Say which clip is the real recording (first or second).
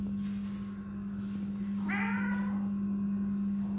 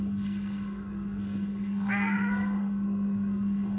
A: first